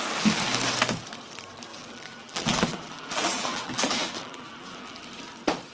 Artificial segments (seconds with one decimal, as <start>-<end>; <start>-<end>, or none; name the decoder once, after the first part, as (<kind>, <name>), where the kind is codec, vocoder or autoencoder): 1.7-5.0 (vocoder, BigVGAN v2)